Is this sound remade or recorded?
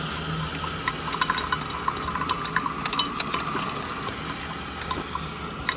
recorded